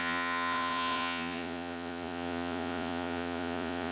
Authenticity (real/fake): fake